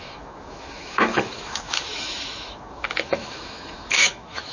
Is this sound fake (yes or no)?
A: yes